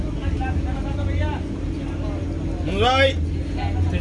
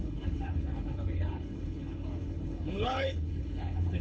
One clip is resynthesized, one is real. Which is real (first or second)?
first